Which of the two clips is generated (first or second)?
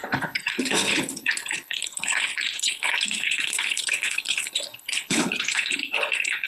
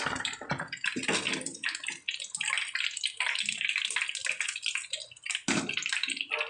first